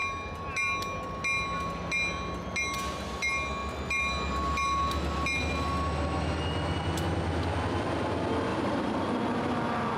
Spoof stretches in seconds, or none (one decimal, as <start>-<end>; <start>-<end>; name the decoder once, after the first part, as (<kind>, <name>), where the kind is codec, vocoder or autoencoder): 8.5-9.2 (vocoder, BigVGAN v2)